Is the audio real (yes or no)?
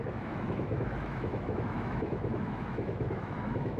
no